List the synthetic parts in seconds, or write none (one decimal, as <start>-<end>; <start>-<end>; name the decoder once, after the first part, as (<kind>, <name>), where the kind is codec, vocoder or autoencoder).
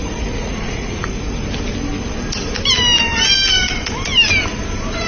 0.0-1.1 (vocoder, Vocos)